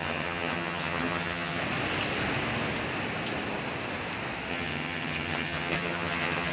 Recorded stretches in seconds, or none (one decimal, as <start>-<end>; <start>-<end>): 1.6-4.5